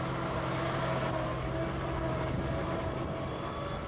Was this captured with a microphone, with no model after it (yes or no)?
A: yes